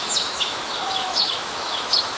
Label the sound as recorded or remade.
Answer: remade